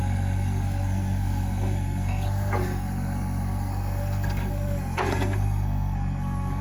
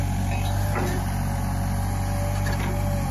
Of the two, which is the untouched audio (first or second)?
second